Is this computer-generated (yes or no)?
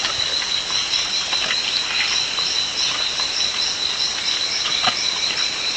no